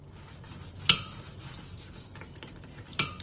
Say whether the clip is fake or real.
real